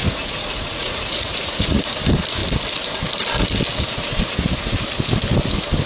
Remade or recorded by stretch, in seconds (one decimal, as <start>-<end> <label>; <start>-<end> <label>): 0.0-1.9 remade; 1.9-5.9 recorded